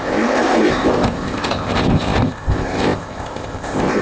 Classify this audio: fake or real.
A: fake